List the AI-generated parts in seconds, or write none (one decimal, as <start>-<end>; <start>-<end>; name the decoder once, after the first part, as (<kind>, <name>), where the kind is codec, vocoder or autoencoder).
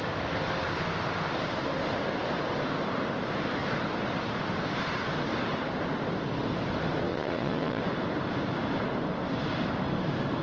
7.1-7.8 (vocoder, Vocos)